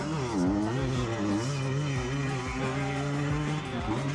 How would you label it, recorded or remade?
recorded